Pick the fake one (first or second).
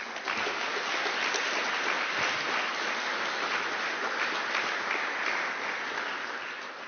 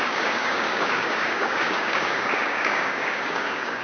second